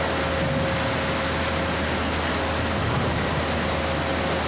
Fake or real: real